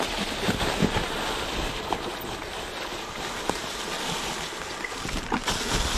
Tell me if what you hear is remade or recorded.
recorded